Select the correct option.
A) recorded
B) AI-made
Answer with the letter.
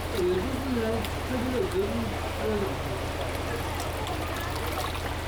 A